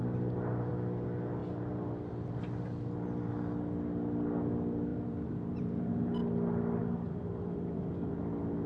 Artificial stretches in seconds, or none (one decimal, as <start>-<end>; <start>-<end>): 0.0-0.7; 4.9-6.2; 6.8-8.2